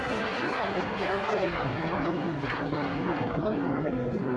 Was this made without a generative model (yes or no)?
no